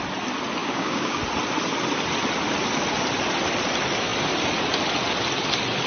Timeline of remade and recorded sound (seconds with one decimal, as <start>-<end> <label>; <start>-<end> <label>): 0.0-0.6 recorded; 0.6-1.2 remade; 1.2-5.9 recorded